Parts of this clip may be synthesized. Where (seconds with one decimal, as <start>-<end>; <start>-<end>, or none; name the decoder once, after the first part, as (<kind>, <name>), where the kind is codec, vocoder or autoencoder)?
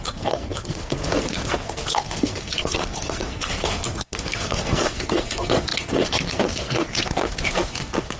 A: 0.0-8.2 (codec, SNAC)